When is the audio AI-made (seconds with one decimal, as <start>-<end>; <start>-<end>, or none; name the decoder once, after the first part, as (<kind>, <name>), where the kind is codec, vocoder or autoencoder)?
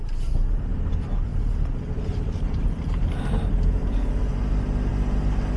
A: 1.3-4.5 (vocoder, BigVGAN v2)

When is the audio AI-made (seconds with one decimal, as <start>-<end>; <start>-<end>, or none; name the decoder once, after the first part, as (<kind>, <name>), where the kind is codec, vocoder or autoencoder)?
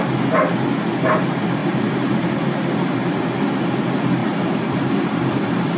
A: 1.6-3.2 (vocoder, BigVGAN v2); 4.2-5.8